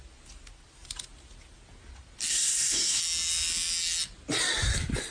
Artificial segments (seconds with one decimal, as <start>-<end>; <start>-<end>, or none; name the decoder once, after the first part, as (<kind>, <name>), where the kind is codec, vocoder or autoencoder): 2.3-3.0 (codec, SNAC)